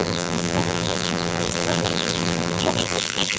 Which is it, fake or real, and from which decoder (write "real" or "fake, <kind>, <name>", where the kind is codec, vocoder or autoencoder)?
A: fake, vocoder, BigVGAN v2